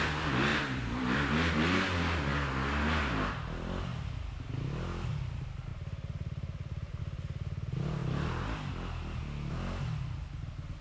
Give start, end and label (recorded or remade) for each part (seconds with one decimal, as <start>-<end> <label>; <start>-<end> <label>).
0.0-0.5 recorded; 0.5-1.3 remade; 1.3-5.7 recorded; 5.7-7.0 remade; 7.0-10.8 recorded